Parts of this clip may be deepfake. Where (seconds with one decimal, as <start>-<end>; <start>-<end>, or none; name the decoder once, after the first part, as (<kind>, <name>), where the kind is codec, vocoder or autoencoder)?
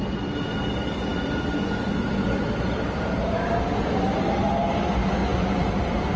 none